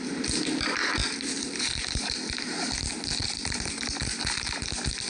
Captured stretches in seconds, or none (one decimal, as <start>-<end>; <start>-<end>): 0.0-3.2; 3.8-5.1